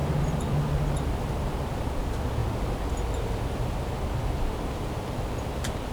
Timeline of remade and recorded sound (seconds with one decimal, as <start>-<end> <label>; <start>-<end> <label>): 0.0-2.4 remade; 2.4-4.7 recorded; 4.7-5.9 remade